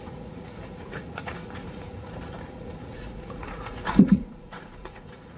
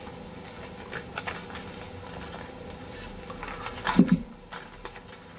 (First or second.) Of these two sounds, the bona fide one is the second